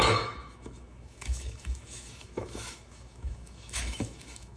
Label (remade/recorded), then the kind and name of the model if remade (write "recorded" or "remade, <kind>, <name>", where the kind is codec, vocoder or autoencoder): remade, autoencoder, DAC-VAE